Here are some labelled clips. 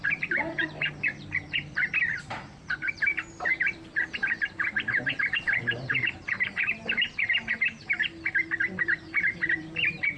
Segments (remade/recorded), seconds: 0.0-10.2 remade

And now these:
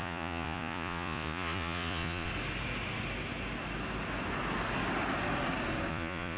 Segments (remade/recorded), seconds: 0.0-2.3 remade; 2.3-5.9 recorded; 5.9-6.4 remade